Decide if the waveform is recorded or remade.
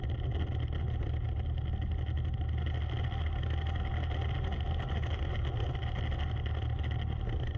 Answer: recorded